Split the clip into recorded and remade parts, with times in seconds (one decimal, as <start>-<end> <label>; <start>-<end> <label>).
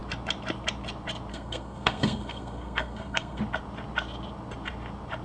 0.0-1.3 recorded; 1.3-3.4 remade; 3.4-5.2 recorded